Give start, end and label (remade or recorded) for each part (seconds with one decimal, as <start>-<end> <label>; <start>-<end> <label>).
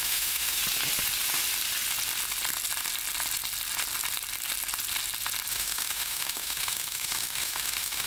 0.0-0.6 remade; 0.6-5.5 recorded; 5.5-8.1 remade